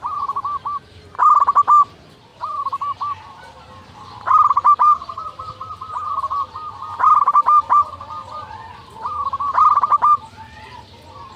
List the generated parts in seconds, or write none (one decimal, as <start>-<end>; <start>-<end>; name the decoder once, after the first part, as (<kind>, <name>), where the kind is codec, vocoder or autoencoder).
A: none